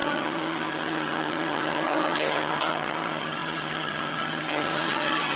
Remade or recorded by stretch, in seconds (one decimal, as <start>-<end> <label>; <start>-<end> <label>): 0.0-5.4 remade